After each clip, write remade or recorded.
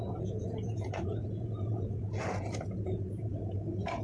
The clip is remade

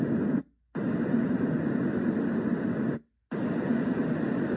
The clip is recorded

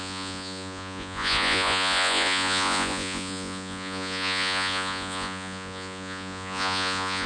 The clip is remade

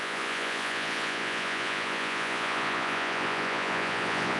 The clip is remade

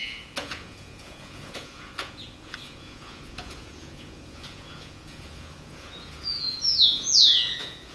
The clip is remade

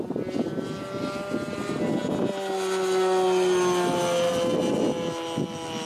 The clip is recorded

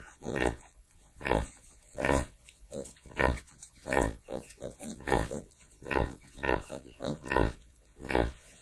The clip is remade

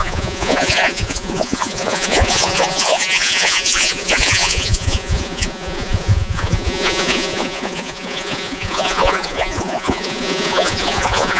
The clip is remade